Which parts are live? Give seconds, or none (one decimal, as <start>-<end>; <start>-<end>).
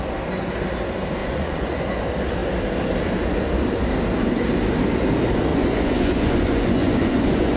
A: 0.0-1.2; 2.0-5.5